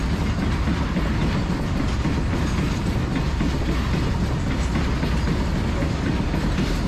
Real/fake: real